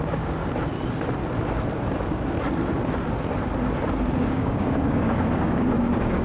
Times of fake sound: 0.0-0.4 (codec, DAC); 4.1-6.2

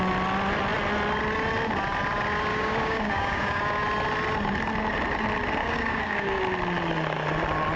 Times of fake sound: 2.5-3.6 (codec, DAC); 5.6-6.4

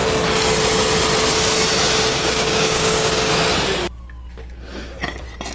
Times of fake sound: 2.1-3.3 (codec, DAC)